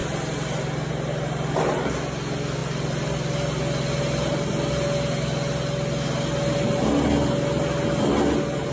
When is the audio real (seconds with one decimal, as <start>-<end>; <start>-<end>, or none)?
0.0-8.7